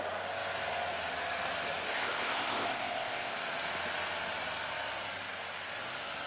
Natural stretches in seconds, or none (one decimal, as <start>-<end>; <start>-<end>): 0.0-1.9; 3.3-6.3